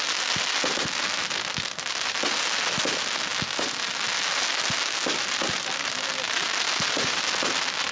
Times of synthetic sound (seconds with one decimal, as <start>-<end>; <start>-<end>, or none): none